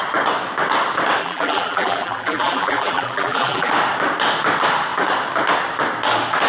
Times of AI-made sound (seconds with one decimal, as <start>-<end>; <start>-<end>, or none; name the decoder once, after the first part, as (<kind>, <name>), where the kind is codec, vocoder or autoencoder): 1.2-3.7 (vocoder, BigVGAN v2)